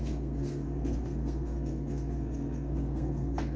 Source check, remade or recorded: remade